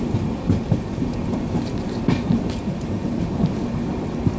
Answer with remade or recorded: recorded